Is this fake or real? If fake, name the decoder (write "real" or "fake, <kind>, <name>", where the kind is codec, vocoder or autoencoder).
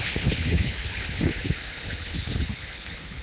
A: fake, codec, HILCodec